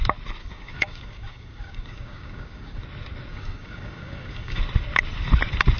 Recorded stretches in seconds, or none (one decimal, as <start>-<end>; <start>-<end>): 0.0-0.4; 2.8-3.3; 4.6-5.8